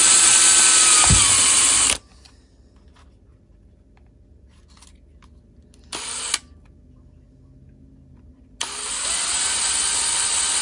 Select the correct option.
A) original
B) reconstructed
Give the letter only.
A